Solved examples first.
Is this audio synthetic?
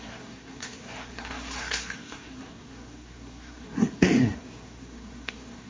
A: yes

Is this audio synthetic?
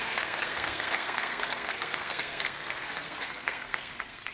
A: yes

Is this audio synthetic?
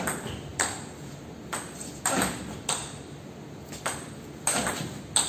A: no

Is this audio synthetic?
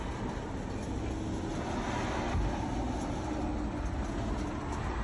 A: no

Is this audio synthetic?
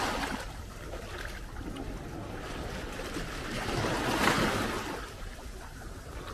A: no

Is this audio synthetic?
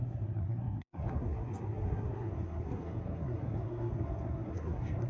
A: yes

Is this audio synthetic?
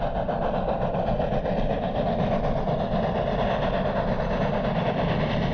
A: no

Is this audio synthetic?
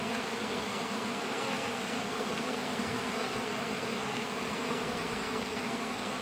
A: yes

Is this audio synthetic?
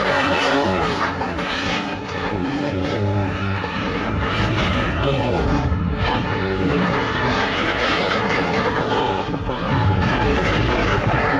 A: yes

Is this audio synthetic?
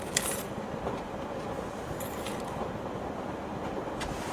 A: no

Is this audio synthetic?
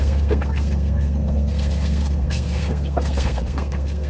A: yes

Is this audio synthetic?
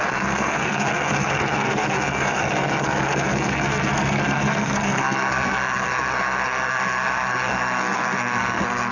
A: yes